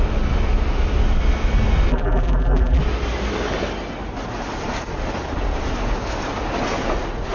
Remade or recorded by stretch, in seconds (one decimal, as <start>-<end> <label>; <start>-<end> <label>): 0.0-1.9 recorded; 1.9-2.8 remade; 2.8-7.3 recorded